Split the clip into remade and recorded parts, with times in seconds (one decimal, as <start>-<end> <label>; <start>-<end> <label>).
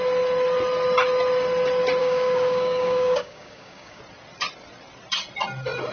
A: 0.0-2.0 recorded; 2.0-4.0 remade; 4.0-5.9 recorded